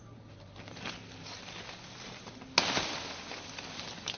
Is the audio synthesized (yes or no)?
no